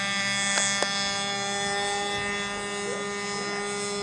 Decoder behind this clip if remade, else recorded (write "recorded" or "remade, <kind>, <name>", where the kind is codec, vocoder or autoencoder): recorded